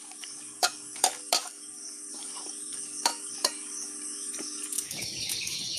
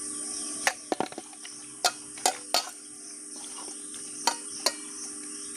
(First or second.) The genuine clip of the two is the second